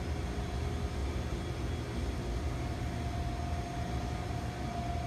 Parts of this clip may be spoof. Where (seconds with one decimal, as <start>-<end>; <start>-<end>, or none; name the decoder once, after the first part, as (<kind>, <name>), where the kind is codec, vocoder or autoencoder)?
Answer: 1.0-1.5 (vocoder, BigVGAN v2)